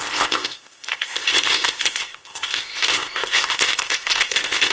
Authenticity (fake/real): fake